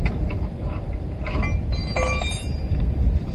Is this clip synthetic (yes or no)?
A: no